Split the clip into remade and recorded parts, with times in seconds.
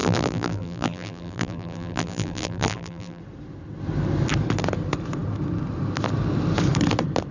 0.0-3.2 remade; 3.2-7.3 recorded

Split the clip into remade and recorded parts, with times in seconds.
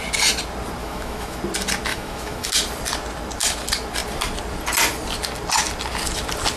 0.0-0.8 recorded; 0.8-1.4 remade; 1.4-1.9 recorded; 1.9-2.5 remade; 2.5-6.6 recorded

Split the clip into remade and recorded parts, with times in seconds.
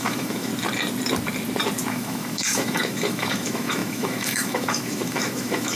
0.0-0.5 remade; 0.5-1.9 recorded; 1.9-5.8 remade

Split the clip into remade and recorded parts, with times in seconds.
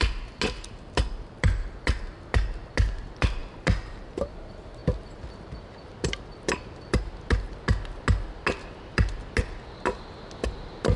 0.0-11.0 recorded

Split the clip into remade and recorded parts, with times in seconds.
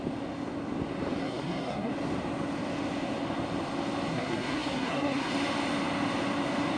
0.0-1.2 recorded; 1.2-1.9 remade; 1.9-4.1 recorded; 4.1-5.3 remade; 5.3-6.8 recorded